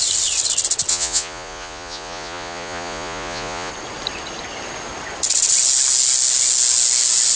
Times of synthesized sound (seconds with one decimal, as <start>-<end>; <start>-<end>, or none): 0.9-3.7